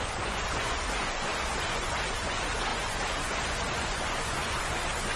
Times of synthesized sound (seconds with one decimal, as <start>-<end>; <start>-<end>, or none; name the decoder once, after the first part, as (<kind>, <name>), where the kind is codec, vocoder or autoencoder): 0.0-5.2 (vocoder, Vocos)